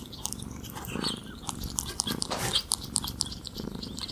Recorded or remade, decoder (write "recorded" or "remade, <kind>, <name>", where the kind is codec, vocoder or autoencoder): recorded